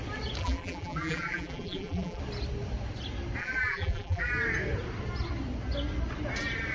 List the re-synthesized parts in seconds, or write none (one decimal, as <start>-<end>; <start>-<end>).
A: 0.4-2.2; 3.4-4.3